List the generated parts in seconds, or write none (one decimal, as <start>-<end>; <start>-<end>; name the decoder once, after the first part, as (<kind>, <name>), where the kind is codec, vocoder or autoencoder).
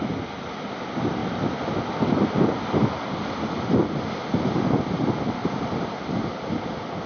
none